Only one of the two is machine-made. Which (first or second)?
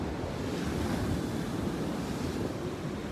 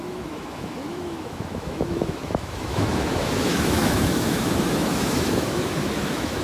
second